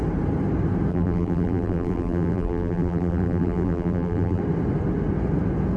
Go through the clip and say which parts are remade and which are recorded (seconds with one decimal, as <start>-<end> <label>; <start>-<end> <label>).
0.0-0.9 recorded; 0.9-4.4 remade; 4.4-5.8 recorded